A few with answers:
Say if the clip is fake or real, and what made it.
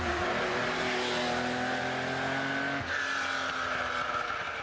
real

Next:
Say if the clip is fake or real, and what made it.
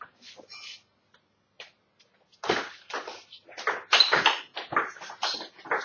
real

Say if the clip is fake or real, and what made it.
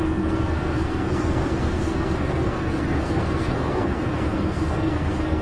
fake, codec, SNAC